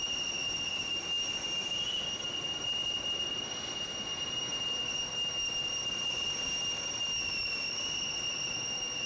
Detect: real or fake real